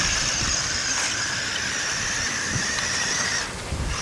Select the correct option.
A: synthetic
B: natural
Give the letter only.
A